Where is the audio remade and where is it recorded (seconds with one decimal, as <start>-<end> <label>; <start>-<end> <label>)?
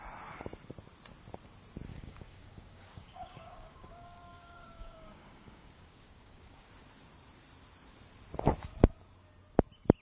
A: 0.0-1.9 recorded; 1.9-6.7 remade; 6.7-10.0 recorded